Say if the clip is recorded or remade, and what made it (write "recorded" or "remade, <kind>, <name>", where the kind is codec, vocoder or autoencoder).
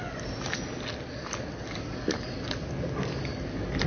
recorded